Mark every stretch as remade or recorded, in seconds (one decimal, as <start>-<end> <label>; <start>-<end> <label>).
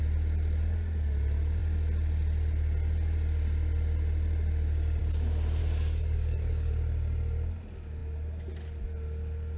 0.0-5.6 recorded; 5.6-6.7 remade; 6.7-9.6 recorded